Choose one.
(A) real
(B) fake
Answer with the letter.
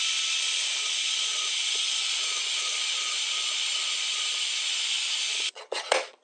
B